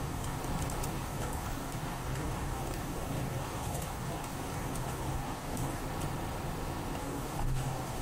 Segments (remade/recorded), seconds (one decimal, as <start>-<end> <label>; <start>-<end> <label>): 0.0-0.4 remade; 0.4-0.9 recorded; 0.9-5.8 remade; 5.8-7.0 recorded; 7.0-8.0 remade